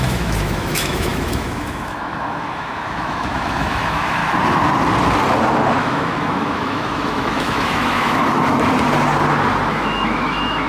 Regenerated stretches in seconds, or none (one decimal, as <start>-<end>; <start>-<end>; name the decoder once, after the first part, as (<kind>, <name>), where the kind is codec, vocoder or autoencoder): 0.0-4.2 (autoencoder, DAC-VAE); 5.8-8.2; 9.7-10.7